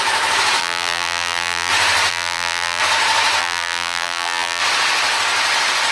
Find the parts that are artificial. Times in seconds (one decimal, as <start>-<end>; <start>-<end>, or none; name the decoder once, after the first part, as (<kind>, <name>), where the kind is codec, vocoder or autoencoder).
0.6-1.7 (vocoder, BigVGAN v2); 2.1-2.8; 3.4-4.6